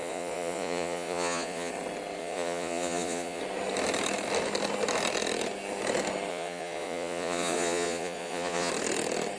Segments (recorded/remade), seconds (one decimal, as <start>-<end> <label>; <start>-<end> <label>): 0.0-1.7 remade; 1.7-2.2 recorded; 2.2-3.4 remade; 3.4-6.3 recorded; 6.3-8.7 remade; 8.7-9.4 recorded